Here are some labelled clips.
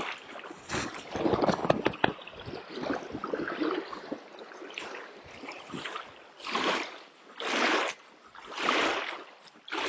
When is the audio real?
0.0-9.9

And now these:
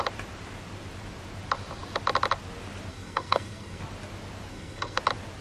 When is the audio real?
0.0-2.9; 3.8-4.5; 5.0-5.4

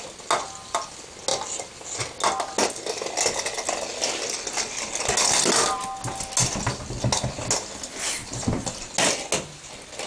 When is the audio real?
0.0-1.3; 2.0-10.1